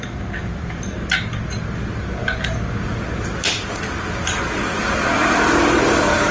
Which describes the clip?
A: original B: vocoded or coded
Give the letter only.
A